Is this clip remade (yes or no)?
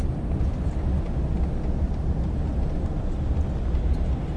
no